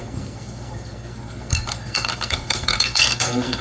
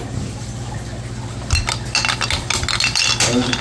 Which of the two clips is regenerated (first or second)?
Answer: first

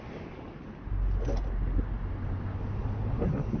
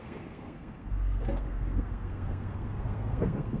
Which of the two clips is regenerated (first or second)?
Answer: second